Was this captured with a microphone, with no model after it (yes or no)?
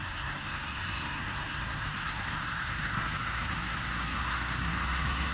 no